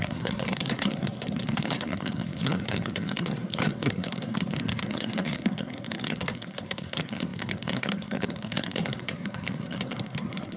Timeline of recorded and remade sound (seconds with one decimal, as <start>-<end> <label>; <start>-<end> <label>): 0.0-10.6 remade